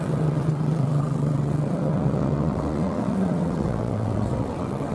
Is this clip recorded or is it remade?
remade